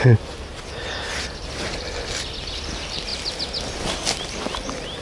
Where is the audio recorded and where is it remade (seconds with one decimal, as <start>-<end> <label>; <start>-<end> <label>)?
0.0-5.0 recorded